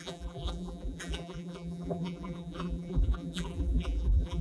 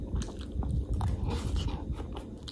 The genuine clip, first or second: second